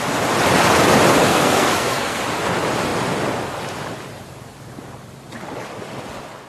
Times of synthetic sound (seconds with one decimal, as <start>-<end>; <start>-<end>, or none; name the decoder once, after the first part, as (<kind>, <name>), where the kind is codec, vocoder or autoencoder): 1.1-2.2 (codec, SNAC)